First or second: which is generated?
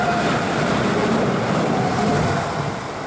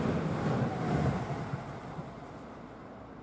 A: second